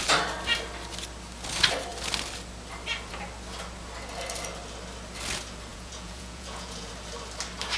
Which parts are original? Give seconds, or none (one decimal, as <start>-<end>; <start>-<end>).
0.0-5.7; 6.9-7.8